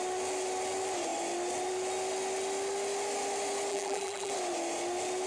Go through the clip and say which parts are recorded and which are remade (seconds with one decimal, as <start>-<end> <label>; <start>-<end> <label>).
0.0-3.7 recorded; 3.7-4.3 remade; 4.3-5.3 recorded